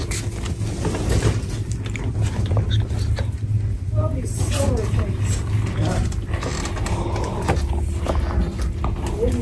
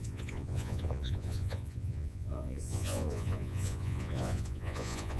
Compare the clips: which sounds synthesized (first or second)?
second